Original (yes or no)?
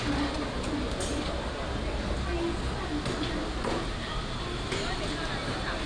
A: yes